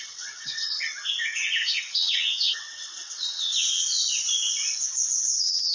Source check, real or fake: fake